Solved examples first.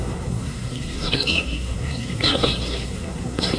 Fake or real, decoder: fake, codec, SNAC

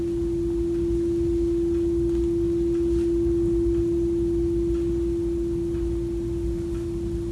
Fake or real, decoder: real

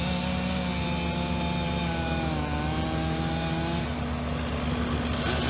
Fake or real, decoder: real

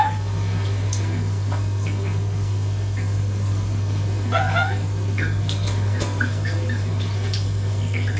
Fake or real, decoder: fake, codec, SNAC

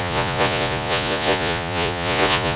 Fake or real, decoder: fake, vocoder, Vocos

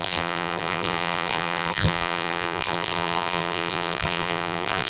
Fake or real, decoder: fake, vocoder, BigVGAN v2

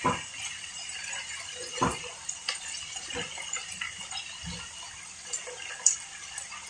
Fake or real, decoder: real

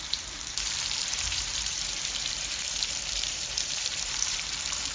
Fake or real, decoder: fake, vocoder, BigVGAN v2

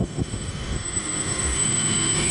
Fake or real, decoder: fake, autoencoder, DAC-VAE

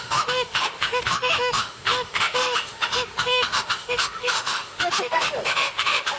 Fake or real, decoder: fake, autoencoder, DAC-VAE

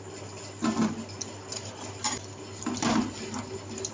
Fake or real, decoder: real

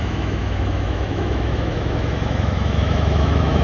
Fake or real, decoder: fake, autoencoder, DAC-VAE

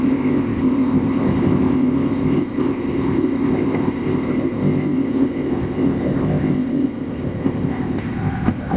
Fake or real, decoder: fake, codec, ZipCodec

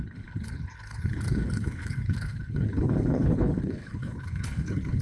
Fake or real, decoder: fake, codec, HILCodec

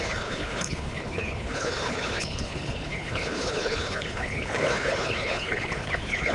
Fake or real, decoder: fake, codec, HILCodec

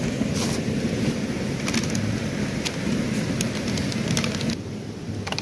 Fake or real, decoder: real